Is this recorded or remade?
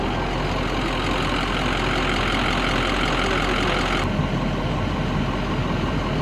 recorded